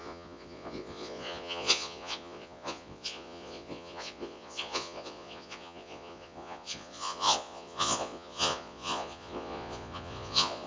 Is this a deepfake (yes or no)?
yes